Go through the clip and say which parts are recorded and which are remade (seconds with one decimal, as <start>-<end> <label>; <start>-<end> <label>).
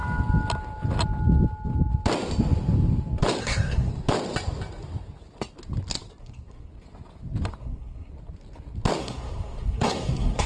0.0-3.4 recorded; 3.4-3.9 remade; 3.9-6.2 recorded; 6.2-6.7 remade; 6.7-7.6 recorded; 7.6-8.1 remade; 8.1-9.0 recorded; 9.0-10.5 remade